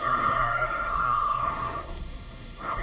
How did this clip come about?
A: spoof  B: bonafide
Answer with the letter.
A